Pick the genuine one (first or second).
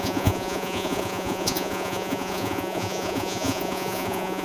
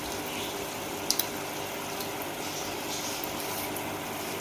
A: second